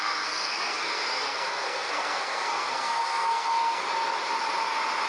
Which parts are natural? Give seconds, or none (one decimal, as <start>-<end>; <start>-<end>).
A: 3.8-5.1